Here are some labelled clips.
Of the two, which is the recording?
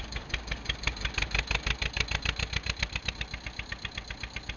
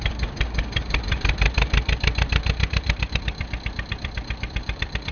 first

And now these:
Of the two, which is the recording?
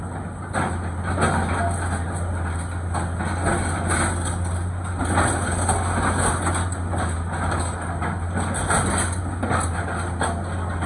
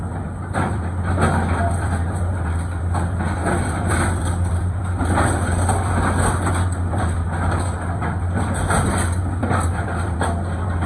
first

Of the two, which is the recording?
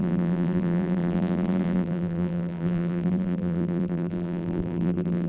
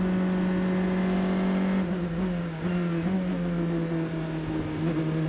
second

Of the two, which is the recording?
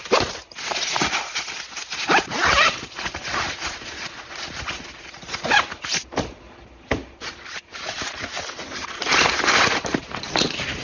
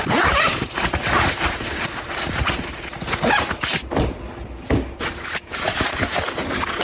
second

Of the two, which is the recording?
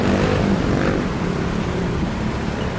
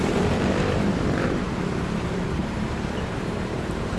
first